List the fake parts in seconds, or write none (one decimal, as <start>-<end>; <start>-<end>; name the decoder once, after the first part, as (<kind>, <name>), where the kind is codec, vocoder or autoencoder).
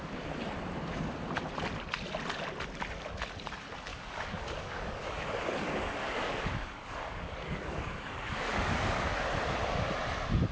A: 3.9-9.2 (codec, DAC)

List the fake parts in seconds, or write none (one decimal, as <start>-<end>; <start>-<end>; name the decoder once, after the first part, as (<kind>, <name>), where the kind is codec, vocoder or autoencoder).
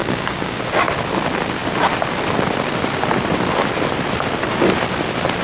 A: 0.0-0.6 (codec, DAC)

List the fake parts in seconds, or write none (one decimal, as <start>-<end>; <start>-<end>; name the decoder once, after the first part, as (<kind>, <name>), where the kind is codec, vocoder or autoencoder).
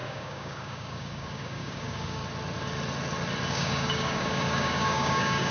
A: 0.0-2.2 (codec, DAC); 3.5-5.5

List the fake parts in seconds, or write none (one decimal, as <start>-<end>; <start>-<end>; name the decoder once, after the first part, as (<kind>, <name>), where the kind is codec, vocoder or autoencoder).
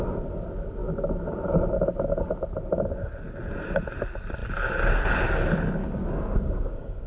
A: 5.8-7.1 (codec, DAC)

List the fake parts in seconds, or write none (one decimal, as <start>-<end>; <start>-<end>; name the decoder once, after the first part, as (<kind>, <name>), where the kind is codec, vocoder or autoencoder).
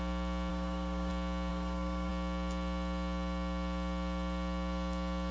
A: 0.5-1.1 (codec, DAC); 1.5-2.1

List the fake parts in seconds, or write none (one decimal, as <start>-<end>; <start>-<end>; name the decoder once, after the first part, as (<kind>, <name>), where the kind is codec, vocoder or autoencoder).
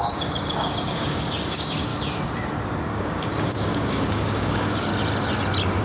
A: 0.0-1.9 (codec, DAC); 2.8-4.9